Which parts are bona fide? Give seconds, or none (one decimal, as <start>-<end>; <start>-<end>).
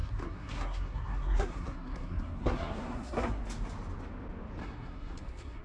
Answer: 3.4-4.6